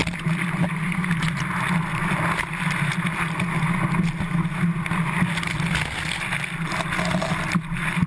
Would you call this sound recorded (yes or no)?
yes